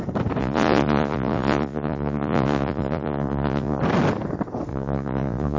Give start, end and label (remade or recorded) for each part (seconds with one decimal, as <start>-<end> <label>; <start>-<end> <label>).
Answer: 0.0-0.4 recorded; 0.4-3.8 remade; 3.8-4.7 recorded; 4.7-5.6 remade